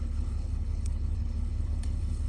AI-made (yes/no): yes